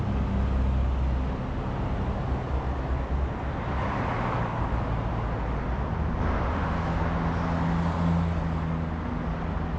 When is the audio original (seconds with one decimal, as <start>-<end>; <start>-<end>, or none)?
0.0-6.5; 7.0-9.8